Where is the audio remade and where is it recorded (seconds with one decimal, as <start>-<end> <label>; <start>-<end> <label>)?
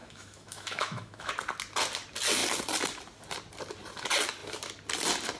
0.0-1.3 remade; 1.3-5.4 recorded